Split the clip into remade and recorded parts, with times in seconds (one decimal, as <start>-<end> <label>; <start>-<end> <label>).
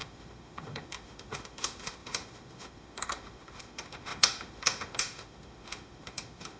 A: 0.0-6.6 remade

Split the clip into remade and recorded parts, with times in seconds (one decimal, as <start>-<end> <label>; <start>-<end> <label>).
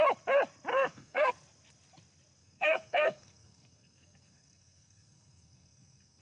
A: 0.0-0.7 recorded; 0.7-1.3 remade; 1.3-2.4 recorded; 2.4-6.2 remade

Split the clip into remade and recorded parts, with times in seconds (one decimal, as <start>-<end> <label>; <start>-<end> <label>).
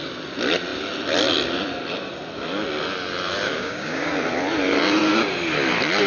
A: 0.0-3.5 recorded; 3.5-4.1 remade; 4.1-6.1 recorded